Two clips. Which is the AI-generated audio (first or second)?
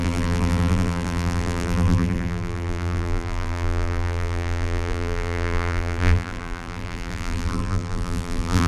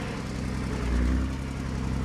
first